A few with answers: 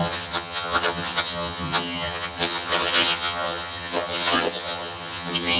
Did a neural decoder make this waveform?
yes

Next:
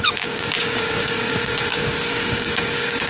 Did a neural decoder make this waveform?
yes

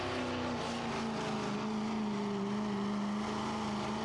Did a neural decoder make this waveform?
no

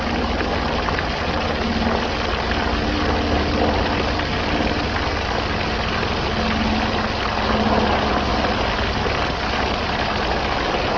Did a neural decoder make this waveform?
no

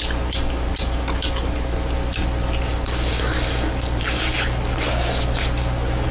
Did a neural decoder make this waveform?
no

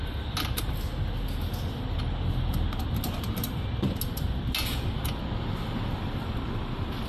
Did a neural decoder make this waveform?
no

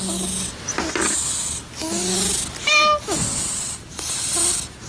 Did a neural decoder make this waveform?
no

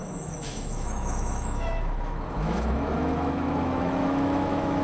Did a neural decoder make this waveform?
yes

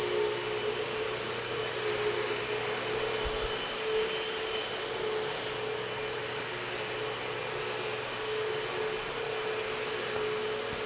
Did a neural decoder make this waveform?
no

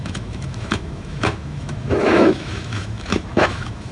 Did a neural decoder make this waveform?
yes